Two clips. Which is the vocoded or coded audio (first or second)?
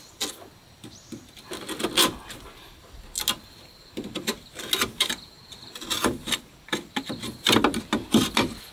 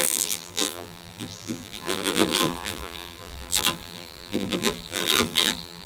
second